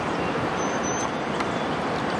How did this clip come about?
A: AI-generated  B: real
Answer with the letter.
B